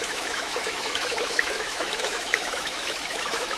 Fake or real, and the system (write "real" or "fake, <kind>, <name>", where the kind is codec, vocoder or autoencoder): fake, autoencoder, DAC-VAE